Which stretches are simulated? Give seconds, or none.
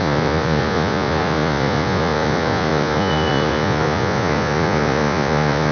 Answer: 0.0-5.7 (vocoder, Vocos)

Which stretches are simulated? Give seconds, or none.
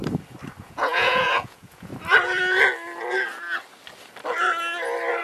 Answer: 0.6-1.9 (vocoder, Vocos)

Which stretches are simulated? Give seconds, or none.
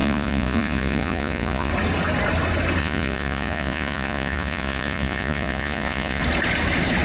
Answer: 0.0-1.7 (vocoder, Vocos); 2.8-6.2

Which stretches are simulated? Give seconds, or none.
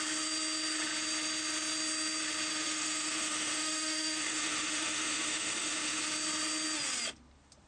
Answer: 2.5-6.0 (autoencoder, DAC-VAE)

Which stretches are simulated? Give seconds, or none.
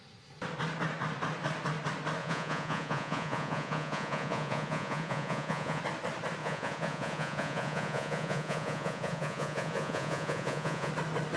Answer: 2.2-5.8 (vocoder, Vocos); 6.4-10.9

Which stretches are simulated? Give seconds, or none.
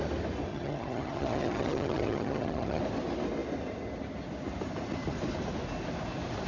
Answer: 0.5-2.8 (vocoder, HiFi-GAN)